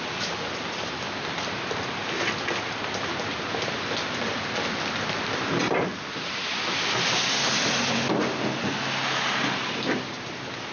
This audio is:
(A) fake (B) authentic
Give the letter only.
B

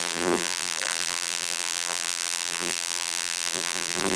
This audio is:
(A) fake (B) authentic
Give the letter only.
A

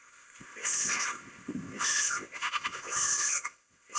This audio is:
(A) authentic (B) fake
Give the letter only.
B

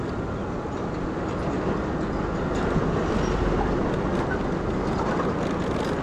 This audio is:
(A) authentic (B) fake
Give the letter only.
A